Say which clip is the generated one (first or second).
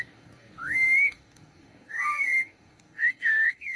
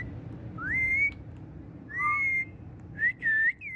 first